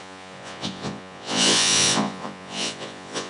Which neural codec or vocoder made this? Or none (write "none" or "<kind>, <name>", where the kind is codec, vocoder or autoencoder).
vocoder, Vocos